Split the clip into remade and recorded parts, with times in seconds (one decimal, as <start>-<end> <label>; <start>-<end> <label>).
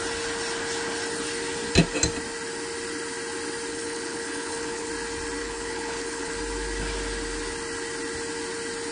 0.0-3.7 recorded; 3.7-4.9 remade; 4.9-5.4 recorded; 5.4-6.3 remade; 6.3-8.9 recorded